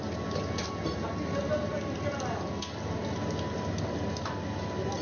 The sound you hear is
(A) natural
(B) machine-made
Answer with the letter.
A